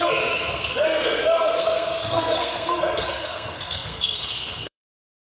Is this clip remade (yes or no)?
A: yes